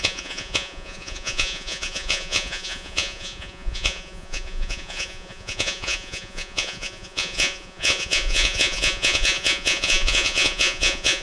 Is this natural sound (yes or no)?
no